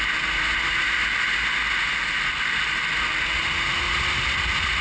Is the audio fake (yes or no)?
no